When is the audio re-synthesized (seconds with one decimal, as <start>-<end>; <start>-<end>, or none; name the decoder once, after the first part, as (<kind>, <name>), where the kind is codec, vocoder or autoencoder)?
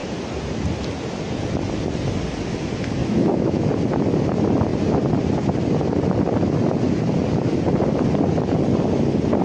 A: 3.0-3.7 (autoencoder, DAC-VAE)